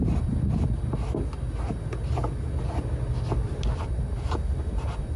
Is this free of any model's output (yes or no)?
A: yes